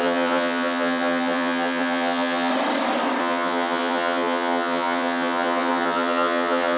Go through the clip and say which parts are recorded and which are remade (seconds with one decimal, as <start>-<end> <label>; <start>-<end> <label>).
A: 0.0-2.5 remade; 2.5-3.2 recorded; 3.2-6.8 remade